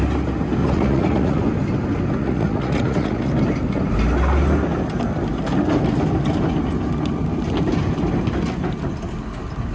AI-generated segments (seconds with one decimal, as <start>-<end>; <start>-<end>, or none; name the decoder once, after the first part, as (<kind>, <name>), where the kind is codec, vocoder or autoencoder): 0.6-1.4 (vocoder, Vocos); 2.2-3.3